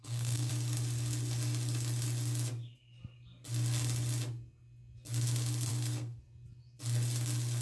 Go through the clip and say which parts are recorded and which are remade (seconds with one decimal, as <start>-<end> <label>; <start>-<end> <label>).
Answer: 0.0-0.5 remade; 0.5-5.7 recorded; 5.7-6.2 remade; 6.2-7.6 recorded